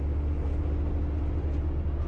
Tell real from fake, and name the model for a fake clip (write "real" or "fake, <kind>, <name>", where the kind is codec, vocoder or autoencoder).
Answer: real